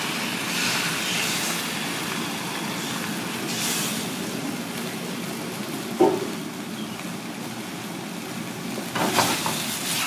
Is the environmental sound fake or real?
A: real